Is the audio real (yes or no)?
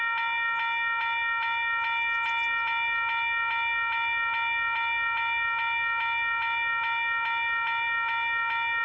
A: yes